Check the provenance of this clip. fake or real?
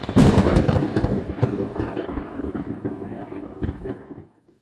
fake